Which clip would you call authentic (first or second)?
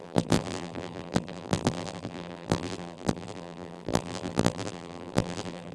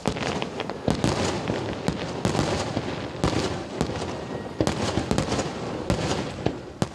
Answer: second